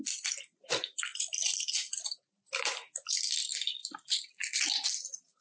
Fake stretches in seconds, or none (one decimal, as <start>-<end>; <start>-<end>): none